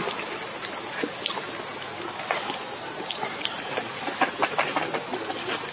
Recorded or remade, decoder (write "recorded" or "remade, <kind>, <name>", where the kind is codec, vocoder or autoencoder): recorded